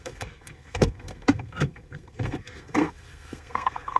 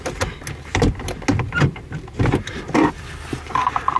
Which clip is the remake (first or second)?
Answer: first